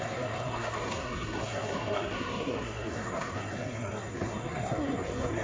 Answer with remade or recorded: remade